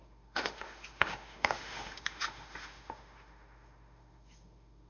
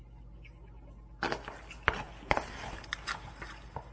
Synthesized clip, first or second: first